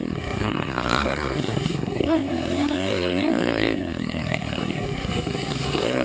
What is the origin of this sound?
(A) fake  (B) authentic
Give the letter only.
A